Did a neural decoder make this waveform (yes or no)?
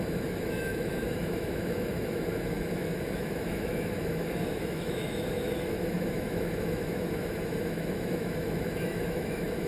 yes